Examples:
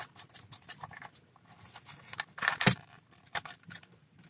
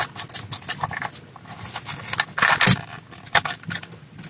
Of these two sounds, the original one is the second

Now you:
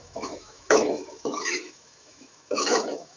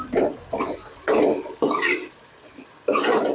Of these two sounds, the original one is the second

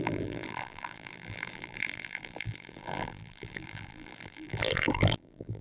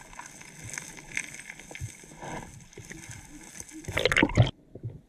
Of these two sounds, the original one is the second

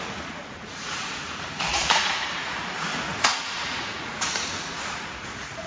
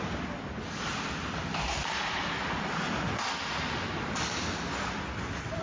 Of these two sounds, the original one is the second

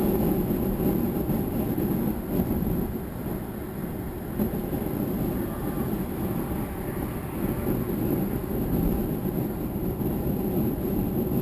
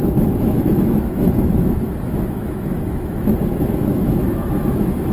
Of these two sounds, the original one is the first